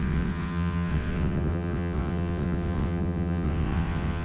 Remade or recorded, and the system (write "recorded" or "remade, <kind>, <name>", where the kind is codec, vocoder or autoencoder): remade, vocoder, WaveNeXt